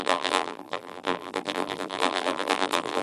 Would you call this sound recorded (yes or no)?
no